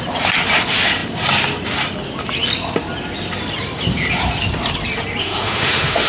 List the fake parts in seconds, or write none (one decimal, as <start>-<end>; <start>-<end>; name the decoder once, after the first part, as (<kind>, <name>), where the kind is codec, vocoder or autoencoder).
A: 5.2-6.1 (autoencoder, DAC-VAE)